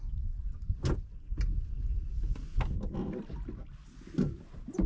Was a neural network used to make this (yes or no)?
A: no